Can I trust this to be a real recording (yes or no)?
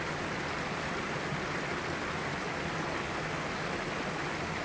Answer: yes